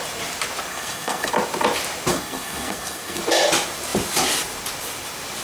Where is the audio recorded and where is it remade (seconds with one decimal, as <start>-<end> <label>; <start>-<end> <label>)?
0.0-0.7 recorded; 0.7-1.3 remade; 1.3-2.1 recorded; 2.1-3.2 remade; 3.2-5.4 recorded